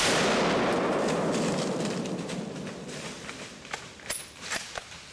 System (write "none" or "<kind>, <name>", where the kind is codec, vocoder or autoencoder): none